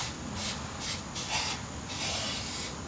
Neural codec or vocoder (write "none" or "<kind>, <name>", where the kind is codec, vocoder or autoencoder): none